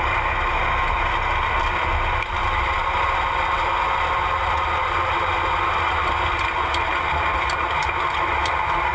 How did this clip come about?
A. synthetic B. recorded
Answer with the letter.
B